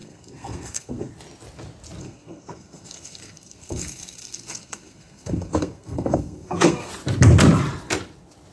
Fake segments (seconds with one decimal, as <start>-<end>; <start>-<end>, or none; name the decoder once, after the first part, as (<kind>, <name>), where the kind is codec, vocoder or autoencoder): 0.0-1.1 (codec, SNAC); 2.0-6.9